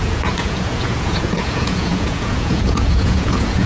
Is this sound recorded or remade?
remade